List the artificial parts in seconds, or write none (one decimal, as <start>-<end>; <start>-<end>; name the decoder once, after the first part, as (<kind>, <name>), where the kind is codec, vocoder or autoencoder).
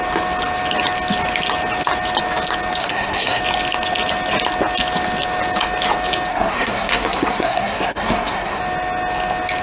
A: 2.8-3.4 (codec, SNAC); 6.3-8.6